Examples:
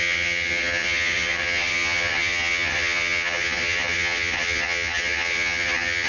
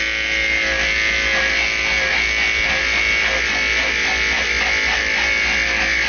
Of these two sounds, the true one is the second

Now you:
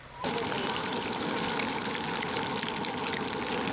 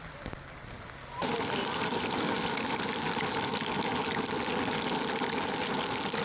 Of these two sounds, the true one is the second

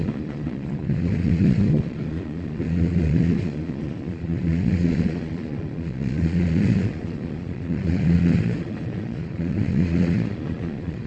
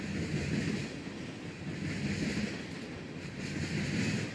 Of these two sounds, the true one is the second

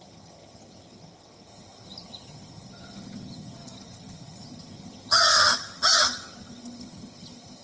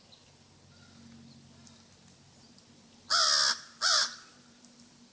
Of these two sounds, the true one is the second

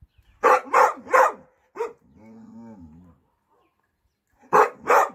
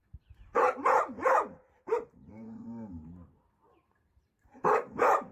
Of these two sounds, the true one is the first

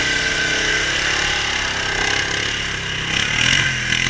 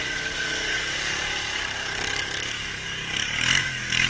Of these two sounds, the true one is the first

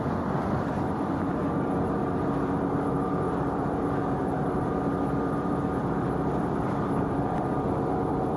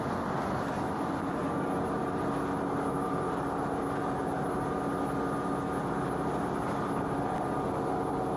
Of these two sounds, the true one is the second